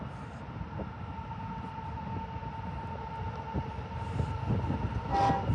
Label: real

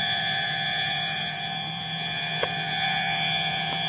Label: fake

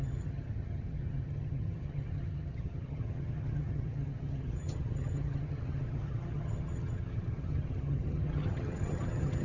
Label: fake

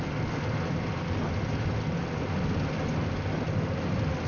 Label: real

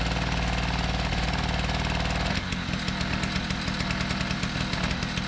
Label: real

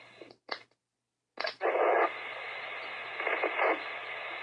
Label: real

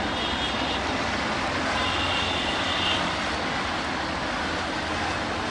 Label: real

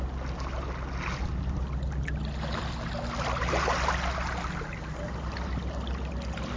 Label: real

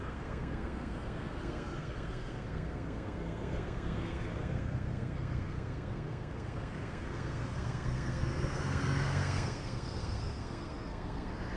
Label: fake